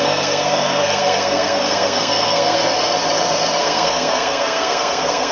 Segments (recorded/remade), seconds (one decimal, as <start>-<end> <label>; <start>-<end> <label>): 0.0-2.6 remade; 2.6-3.6 recorded; 3.6-5.3 remade